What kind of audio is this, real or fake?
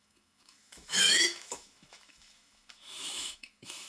fake